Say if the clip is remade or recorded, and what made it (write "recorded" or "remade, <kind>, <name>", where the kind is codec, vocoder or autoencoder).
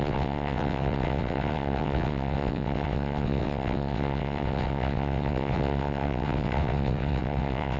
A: remade, vocoder, WaveNeXt